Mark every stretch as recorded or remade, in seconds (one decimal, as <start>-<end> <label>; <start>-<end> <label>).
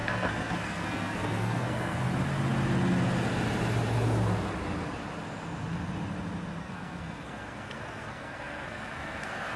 0.0-2.0 remade; 2.0-6.6 recorded; 6.6-9.6 remade